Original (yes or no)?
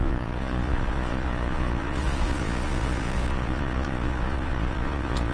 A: no